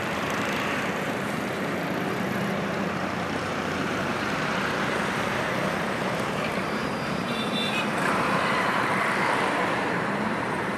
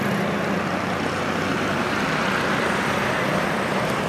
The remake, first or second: first